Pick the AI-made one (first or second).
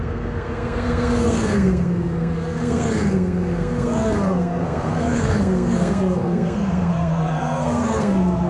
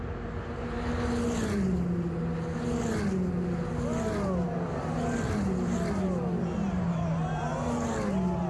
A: first